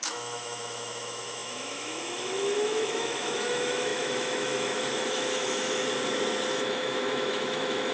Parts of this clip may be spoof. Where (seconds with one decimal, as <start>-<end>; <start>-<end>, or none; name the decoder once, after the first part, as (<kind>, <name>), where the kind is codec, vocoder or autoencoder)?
0.0-5.8 (autoencoder, DAC-VAE); 6.5-7.9